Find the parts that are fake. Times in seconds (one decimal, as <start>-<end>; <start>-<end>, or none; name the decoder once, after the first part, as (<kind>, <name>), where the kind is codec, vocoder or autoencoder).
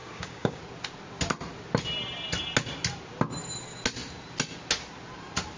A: 0.0-0.6 (codec, DAC)